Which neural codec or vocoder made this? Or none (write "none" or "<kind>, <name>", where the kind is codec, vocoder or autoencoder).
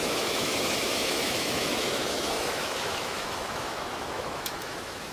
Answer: autoencoder, DAC-VAE